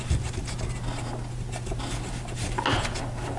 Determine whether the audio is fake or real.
real